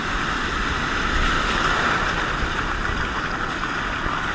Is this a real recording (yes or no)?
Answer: yes